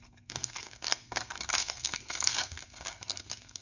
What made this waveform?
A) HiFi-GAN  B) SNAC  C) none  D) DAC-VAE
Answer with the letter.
B